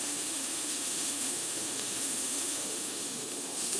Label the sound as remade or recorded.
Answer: remade